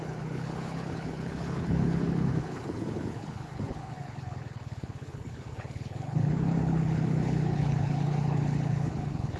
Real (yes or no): no